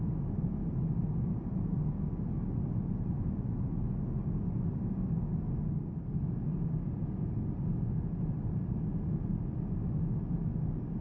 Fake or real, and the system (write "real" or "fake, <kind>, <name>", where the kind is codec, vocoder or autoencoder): real